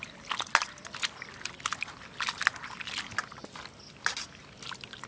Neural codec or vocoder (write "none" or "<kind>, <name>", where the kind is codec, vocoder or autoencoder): none